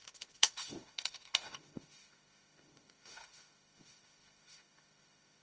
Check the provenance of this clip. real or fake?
fake